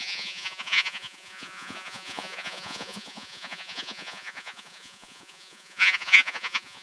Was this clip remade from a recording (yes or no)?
yes